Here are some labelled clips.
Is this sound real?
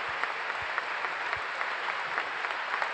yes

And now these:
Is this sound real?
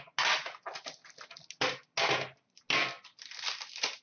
yes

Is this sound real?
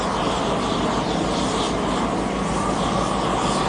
yes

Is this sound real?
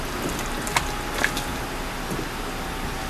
yes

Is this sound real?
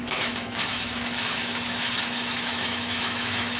no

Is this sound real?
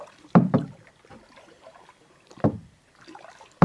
no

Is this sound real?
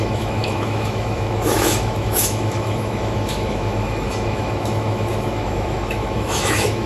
no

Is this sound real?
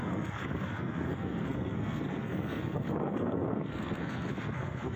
no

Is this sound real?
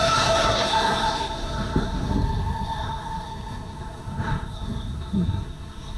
no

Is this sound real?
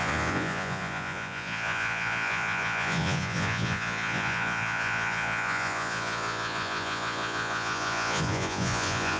no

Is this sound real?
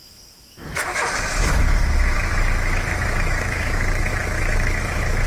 no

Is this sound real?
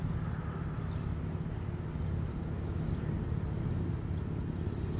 yes